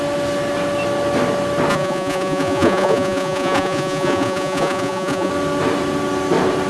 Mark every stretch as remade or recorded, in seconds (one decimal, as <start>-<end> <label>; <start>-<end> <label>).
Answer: 0.0-1.7 recorded; 1.7-5.3 remade; 5.3-6.7 recorded